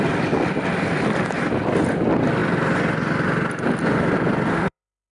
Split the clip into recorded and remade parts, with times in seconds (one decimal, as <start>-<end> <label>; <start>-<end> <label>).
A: 0.0-4.5 recorded; 4.5-5.1 remade